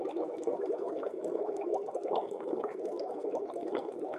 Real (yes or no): no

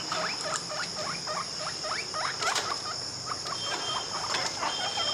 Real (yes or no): yes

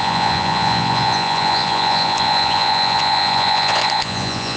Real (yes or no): no